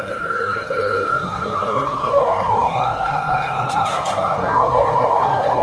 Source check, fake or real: fake